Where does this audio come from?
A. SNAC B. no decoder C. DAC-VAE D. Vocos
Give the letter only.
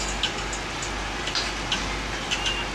B